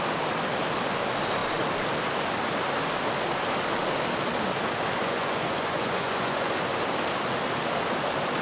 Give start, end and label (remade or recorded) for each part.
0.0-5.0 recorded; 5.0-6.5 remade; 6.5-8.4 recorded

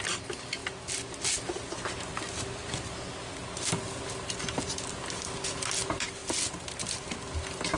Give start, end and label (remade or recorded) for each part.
0.0-7.8 recorded

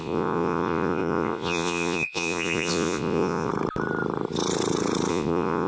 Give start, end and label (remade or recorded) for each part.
0.0-3.5 remade; 3.5-5.1 recorded; 5.1-5.7 remade

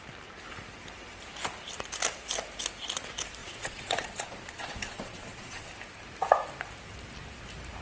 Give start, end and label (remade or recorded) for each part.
0.0-3.4 recorded; 3.4-5.7 remade; 5.7-7.8 recorded

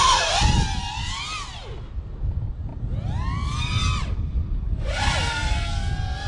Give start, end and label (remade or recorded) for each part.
0.0-6.3 recorded

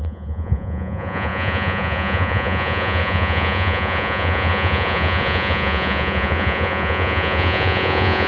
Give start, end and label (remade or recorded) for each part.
0.0-8.3 remade

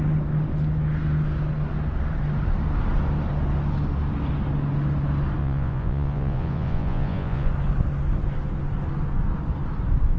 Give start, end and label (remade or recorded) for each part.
0.0-5.4 recorded; 5.4-7.5 remade; 7.5-10.2 recorded